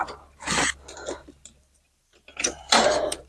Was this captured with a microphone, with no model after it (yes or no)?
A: no